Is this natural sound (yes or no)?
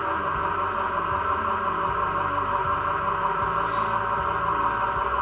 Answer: yes